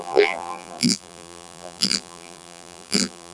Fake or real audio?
fake